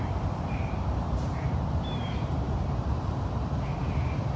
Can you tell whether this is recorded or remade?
remade